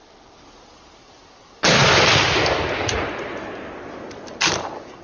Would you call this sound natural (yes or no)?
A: yes